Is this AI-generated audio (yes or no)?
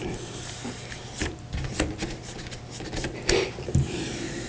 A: no